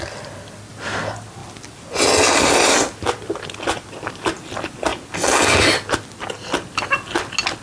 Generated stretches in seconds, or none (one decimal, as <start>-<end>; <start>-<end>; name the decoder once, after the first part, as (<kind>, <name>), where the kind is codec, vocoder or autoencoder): none